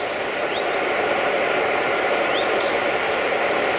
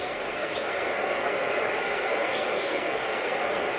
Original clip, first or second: first